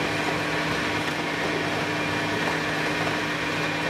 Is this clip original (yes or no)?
yes